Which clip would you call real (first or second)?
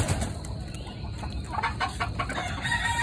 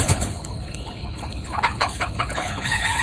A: first